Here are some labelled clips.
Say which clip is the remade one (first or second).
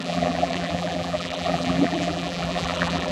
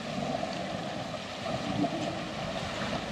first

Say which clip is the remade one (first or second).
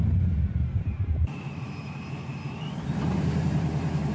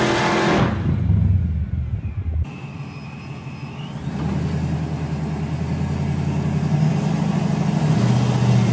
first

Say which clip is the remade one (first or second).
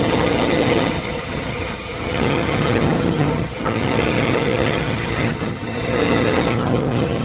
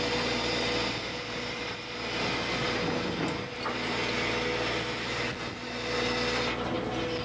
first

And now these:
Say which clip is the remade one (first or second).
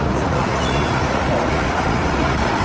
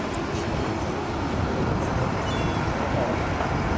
first